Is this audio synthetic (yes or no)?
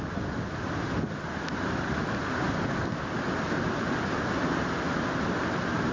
no